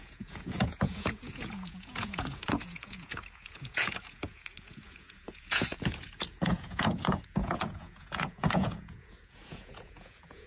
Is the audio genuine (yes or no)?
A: no